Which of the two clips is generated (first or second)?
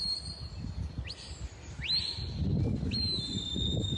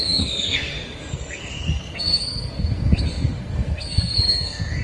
second